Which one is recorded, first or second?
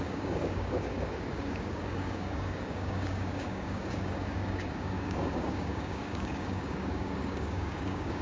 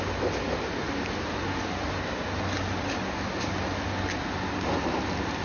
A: second